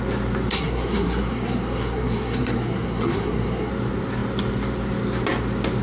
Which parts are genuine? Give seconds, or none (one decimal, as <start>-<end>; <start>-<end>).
0.0-0.5; 3.7-5.8